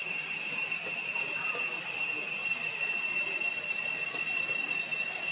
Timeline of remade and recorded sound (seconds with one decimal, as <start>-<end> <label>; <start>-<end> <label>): 0.0-3.2 remade; 3.2-5.3 recorded